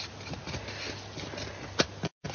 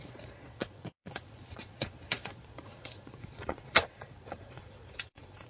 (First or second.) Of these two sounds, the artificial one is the second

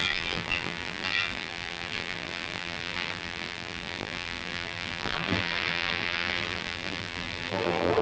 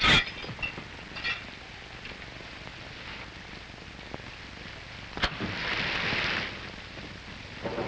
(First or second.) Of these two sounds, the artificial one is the first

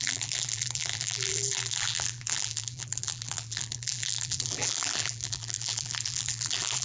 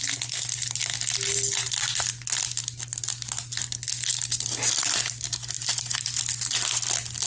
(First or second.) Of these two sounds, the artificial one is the first